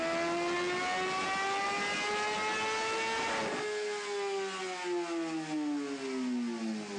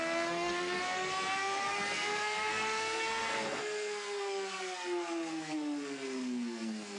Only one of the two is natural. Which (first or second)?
first